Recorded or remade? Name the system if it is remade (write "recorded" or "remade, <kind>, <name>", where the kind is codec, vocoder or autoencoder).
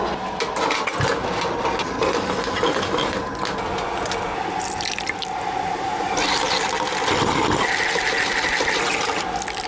recorded